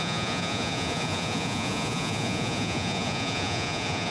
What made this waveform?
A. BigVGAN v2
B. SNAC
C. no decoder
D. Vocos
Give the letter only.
D